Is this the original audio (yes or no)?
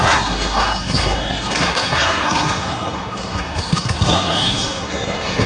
no